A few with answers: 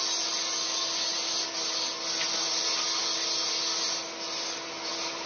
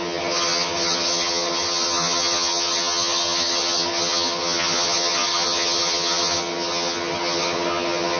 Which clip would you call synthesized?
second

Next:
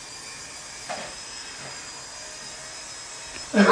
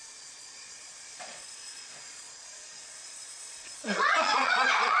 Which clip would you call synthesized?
second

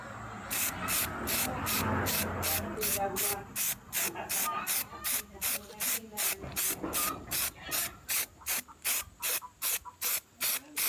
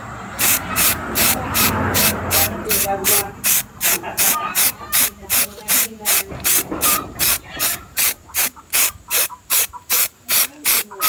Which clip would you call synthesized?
second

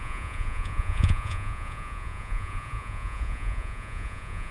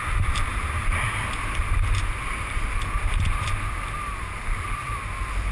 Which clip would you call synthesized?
first